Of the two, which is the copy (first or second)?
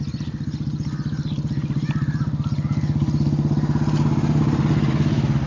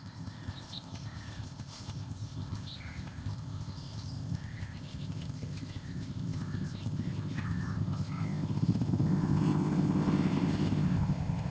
second